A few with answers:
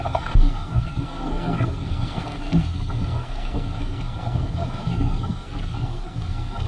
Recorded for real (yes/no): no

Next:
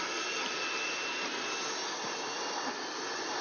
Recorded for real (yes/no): yes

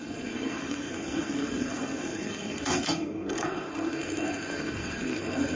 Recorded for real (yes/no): no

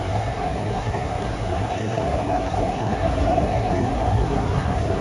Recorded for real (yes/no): no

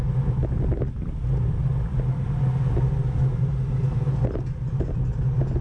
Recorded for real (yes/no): yes